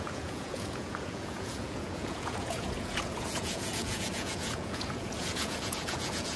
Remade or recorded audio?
remade